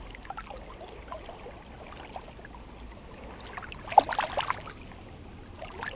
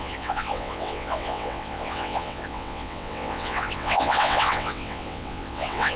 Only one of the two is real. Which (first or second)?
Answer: first